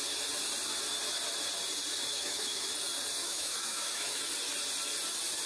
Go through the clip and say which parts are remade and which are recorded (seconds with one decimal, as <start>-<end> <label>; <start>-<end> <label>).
0.0-2.1 recorded; 2.1-2.7 remade; 2.7-3.2 recorded; 3.2-4.2 remade; 4.2-5.5 recorded